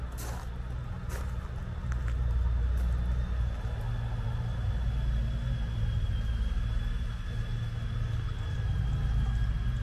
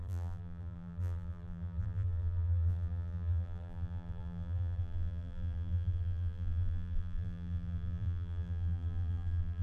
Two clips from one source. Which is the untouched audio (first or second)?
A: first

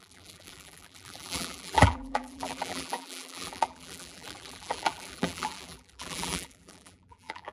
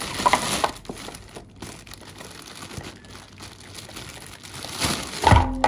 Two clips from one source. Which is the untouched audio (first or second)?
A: second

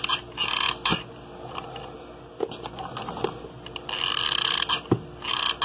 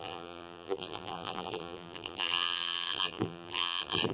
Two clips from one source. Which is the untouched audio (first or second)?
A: first